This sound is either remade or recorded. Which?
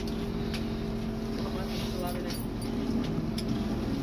recorded